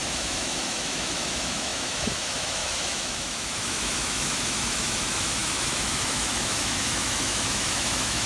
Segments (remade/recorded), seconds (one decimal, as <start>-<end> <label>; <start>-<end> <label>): 0.0-8.3 remade